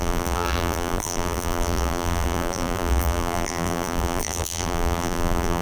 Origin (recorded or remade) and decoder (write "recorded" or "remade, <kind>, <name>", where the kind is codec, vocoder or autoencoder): remade, vocoder, BigVGAN v2